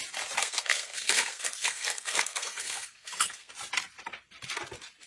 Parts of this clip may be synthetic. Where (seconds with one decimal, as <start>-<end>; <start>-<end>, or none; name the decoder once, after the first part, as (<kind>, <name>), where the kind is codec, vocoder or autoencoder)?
0.4-3.5 (codec, SNAC)